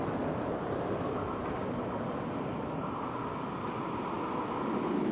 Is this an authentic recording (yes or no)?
yes